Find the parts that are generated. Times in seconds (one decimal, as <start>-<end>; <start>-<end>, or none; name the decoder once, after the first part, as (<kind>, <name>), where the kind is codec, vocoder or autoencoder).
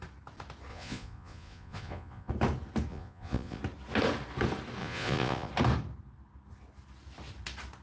0.7-2.3 (vocoder, Vocos); 2.9-3.6; 4.8-5.5